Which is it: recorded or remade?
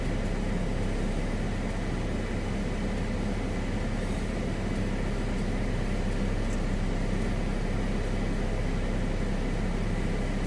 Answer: recorded